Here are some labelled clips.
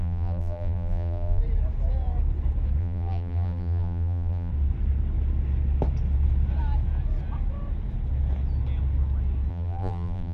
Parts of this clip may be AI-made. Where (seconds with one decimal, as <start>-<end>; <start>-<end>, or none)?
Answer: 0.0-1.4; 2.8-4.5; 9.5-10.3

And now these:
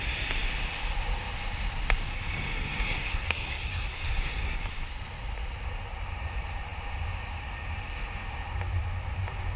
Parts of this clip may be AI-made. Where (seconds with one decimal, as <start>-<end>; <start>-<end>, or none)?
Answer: 2.5-4.6

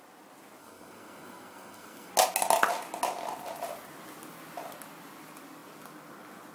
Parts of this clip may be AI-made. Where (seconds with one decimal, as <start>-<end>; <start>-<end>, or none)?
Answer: 0.6-2.1

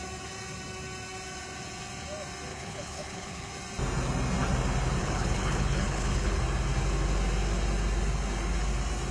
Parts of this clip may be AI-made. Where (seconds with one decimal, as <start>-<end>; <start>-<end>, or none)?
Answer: 2.5-3.5; 5.0-6.4